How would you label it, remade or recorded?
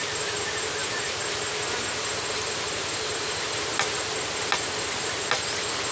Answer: recorded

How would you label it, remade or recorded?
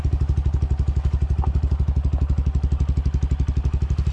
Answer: recorded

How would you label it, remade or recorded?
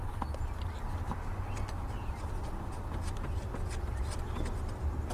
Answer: recorded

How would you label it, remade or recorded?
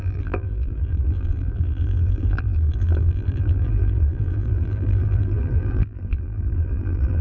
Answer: remade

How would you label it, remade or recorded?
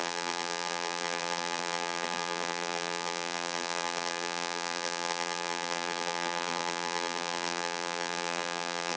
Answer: remade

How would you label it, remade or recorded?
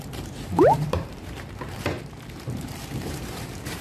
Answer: remade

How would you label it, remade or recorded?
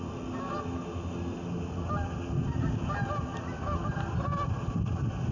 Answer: recorded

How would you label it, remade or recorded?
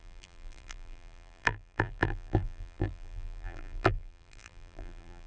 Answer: remade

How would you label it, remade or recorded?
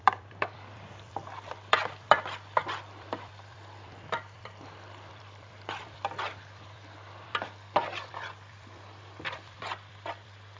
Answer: remade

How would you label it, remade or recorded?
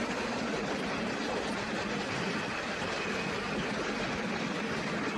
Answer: recorded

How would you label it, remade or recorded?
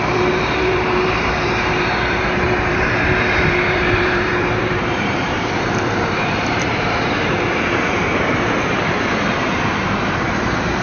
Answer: remade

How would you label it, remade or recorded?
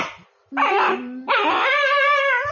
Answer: remade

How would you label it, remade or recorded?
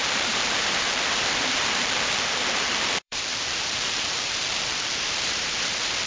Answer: remade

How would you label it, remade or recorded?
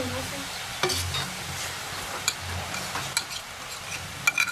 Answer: recorded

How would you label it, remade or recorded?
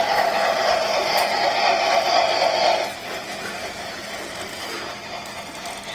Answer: recorded